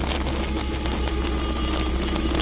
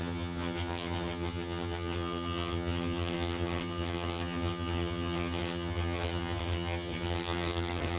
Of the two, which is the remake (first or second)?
second